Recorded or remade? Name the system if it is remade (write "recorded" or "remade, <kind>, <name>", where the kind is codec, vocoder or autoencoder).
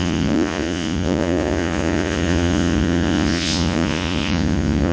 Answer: remade, vocoder, Vocos